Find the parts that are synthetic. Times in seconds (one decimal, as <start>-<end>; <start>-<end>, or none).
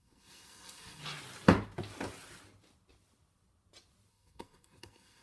0.0-1.0; 4.1-5.2